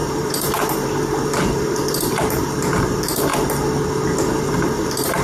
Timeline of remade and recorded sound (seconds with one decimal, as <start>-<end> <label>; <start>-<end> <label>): 0.0-3.3 remade; 3.3-4.3 recorded; 4.3-5.2 remade